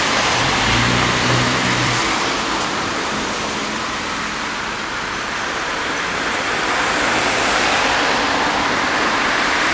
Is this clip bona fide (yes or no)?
no